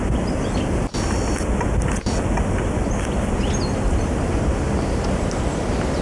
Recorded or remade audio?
recorded